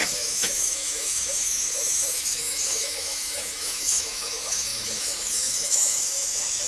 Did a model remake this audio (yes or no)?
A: yes